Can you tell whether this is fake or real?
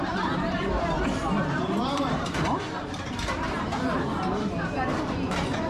fake